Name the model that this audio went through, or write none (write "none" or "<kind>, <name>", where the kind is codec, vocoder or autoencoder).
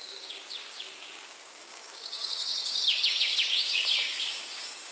codec, DAC